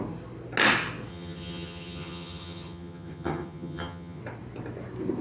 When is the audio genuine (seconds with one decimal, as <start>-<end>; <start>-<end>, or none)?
0.0-1.1; 4.2-5.2